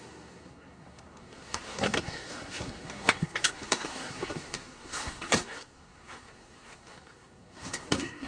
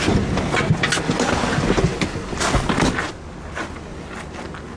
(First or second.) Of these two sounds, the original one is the second